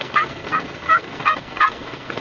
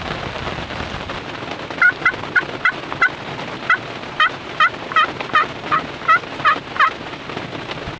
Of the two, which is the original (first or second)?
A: second